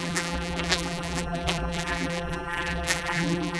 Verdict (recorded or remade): remade